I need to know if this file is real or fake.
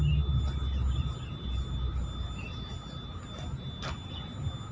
real